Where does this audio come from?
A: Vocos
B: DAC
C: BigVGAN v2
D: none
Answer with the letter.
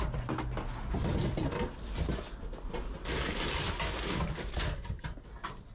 D